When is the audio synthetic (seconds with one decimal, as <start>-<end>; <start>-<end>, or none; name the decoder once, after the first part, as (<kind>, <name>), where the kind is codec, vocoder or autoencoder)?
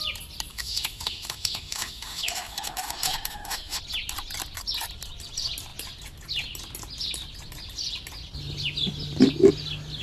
0.5-3.8 (autoencoder, DAC-VAE)